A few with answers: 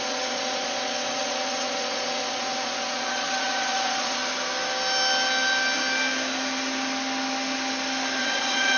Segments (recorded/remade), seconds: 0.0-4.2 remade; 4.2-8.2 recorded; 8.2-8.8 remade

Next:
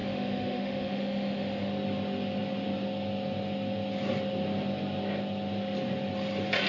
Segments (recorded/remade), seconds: 0.0-1.7 remade; 1.7-6.7 recorded

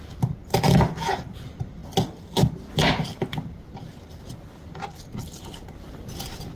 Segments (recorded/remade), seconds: 0.0-6.6 recorded

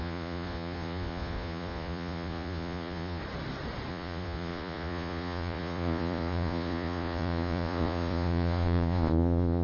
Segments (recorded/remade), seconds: 0.0-3.2 remade; 3.2-3.9 recorded; 3.9-9.6 remade

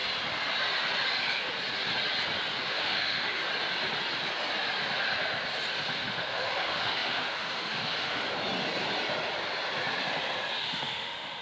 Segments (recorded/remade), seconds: 0.0-2.7 recorded; 2.7-3.4 remade; 3.4-5.9 recorded; 5.9-8.2 remade; 8.2-10.6 recorded; 10.6-11.4 remade

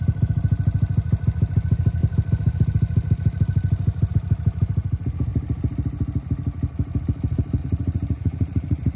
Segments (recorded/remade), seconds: 0.0-7.6 recorded; 7.6-9.0 remade

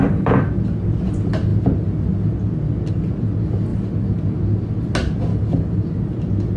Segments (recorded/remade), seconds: 0.0-6.6 recorded